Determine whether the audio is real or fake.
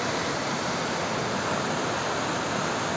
real